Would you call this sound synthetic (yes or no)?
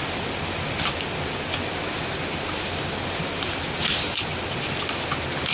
no